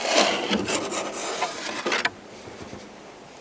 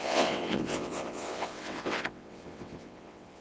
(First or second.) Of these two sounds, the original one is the first